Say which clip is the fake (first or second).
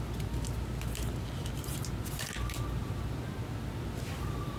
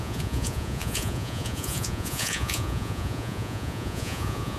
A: second